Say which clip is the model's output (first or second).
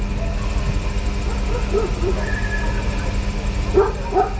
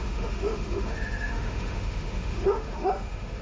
second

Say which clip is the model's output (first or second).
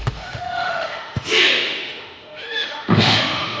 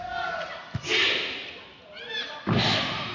first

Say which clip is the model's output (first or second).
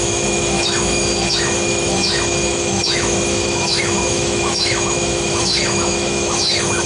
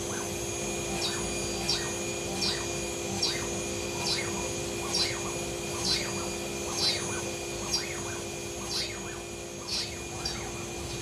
first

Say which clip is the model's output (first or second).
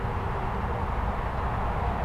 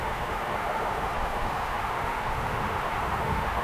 second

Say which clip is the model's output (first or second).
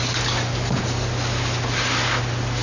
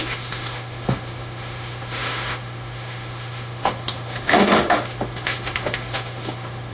second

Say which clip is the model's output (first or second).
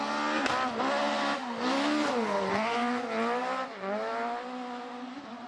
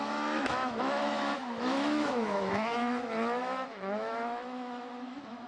second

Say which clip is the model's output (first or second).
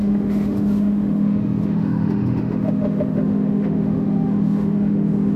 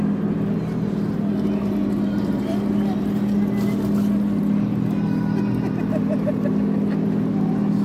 first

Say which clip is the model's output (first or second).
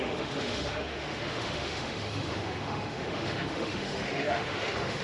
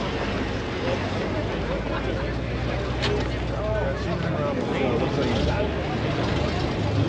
first